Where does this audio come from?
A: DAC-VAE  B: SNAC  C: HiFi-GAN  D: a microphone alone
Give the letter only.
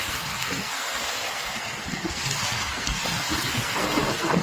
B